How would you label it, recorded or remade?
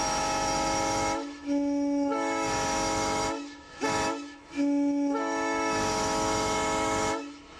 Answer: remade